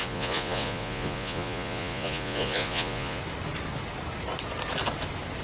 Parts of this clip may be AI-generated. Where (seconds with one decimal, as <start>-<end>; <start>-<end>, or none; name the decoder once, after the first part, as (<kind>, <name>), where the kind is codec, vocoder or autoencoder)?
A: 0.0-3.2 (vocoder, Vocos)